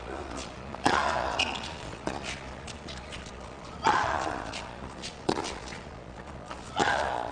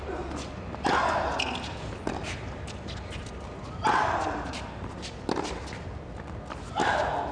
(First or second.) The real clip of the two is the second